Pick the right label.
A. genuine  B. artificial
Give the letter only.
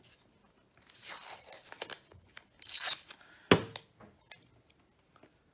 A